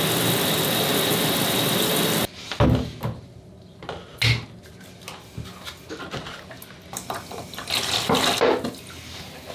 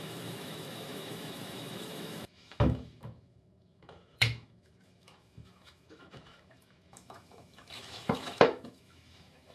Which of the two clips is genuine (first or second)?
first